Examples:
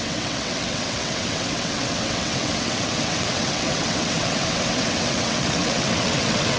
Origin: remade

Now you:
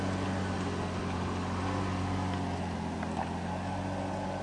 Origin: recorded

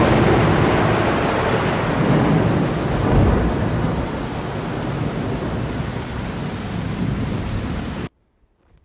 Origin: recorded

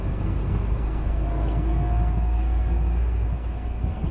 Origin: remade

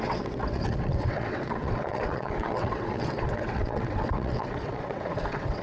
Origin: remade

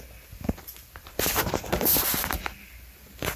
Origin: remade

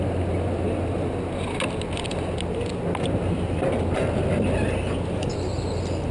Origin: recorded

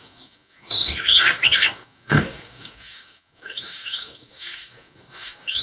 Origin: remade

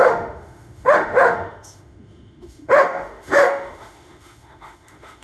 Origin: remade